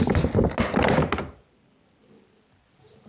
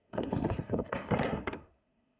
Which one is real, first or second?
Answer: first